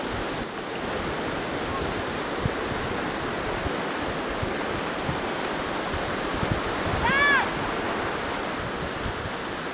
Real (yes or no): yes